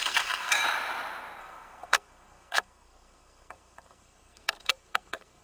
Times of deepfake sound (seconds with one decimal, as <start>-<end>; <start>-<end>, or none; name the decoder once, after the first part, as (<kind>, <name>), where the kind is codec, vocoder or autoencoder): 0.0-0.6 (codec, SNAC); 1.4-5.4